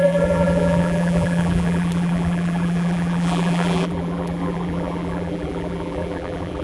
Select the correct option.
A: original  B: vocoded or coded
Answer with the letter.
B